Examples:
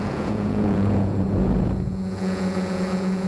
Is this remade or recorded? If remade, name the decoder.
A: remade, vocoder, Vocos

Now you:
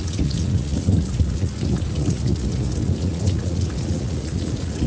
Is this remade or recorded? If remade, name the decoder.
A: remade, vocoder, Vocos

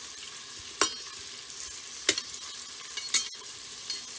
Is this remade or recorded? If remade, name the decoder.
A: recorded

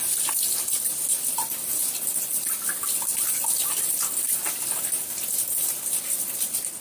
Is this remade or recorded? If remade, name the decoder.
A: recorded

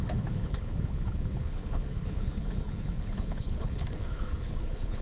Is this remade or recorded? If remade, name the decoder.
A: remade, codec, HILCodec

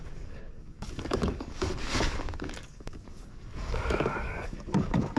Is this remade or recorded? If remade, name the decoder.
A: remade, codec, DAC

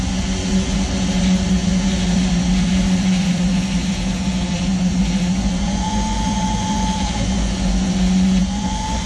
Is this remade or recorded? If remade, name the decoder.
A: remade, vocoder, Vocos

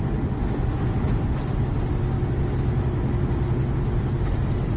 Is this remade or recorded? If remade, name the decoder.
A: recorded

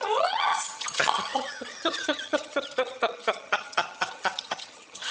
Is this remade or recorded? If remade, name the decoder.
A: remade, vocoder, HiFi-GAN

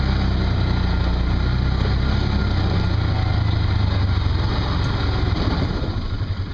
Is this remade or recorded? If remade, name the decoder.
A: recorded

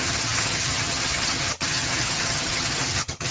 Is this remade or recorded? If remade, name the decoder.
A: remade, vocoder, HiFi-GAN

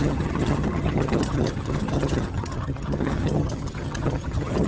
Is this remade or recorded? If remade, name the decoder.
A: remade, vocoder, HiFi-GAN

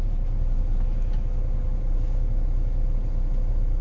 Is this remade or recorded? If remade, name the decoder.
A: recorded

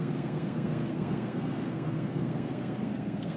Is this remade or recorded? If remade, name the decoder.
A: remade, codec, SNAC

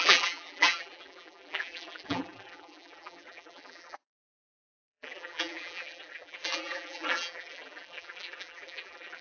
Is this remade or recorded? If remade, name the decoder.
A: remade, vocoder, BigVGAN v2